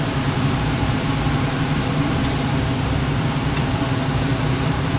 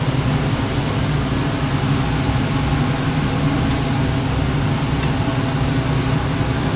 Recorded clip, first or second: second